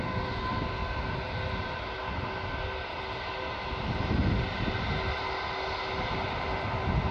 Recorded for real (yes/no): yes